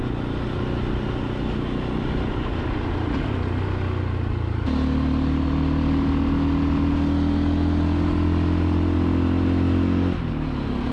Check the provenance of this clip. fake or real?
real